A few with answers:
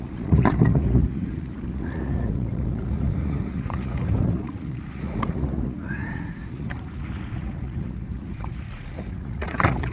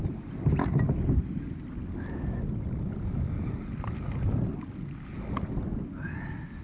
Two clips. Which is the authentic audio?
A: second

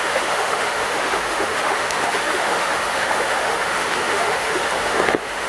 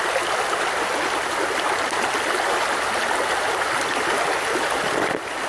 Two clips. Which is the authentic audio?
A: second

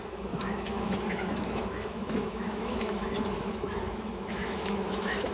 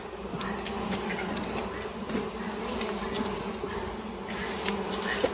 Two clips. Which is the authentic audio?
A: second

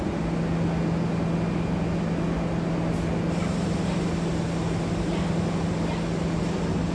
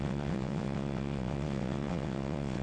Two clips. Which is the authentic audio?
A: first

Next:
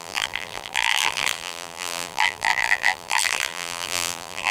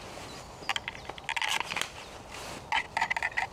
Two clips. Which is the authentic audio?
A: second